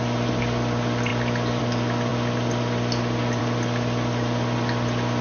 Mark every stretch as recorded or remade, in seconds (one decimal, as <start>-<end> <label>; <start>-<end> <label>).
0.0-5.2 recorded